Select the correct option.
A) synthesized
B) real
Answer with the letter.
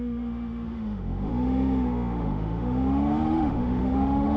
A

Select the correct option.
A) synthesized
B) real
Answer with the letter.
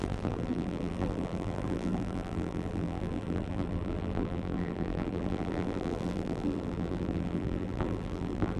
A